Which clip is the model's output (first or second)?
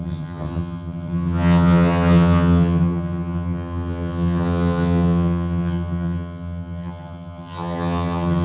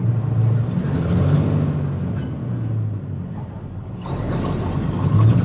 first